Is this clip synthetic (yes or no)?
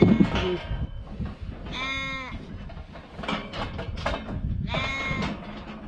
no